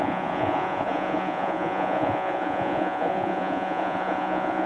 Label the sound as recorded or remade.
remade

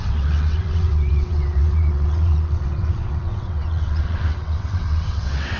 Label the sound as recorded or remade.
remade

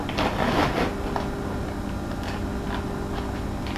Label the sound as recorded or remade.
recorded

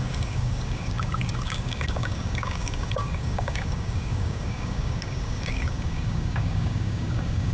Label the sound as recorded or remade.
remade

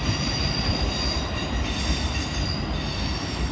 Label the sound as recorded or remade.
recorded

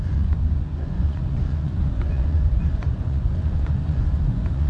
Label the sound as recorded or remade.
remade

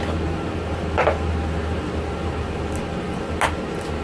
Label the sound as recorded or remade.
recorded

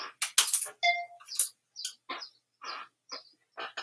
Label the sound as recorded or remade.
recorded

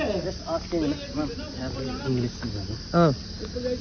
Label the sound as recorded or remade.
recorded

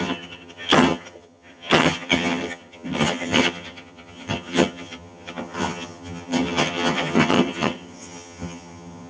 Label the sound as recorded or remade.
remade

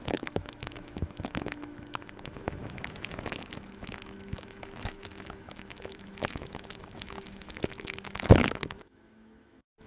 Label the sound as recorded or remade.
remade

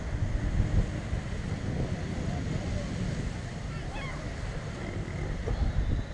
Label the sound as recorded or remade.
recorded